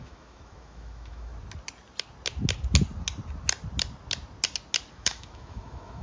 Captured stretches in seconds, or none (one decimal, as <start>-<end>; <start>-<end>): 1.3-4.9